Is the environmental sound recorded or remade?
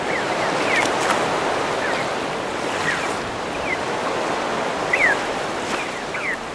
recorded